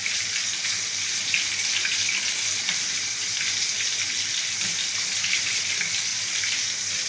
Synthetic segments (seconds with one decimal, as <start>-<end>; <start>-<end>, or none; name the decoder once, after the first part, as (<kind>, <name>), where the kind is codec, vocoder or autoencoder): none